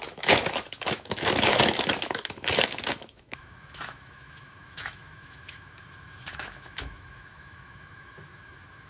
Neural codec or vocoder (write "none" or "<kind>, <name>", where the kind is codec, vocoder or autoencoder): autoencoder, DAC-VAE